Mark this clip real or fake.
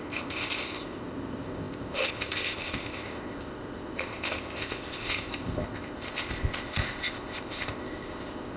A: fake